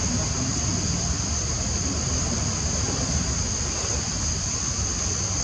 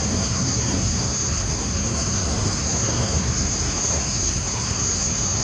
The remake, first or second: second